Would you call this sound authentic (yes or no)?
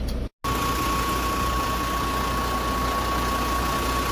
yes